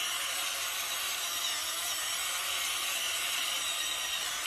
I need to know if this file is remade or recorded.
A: recorded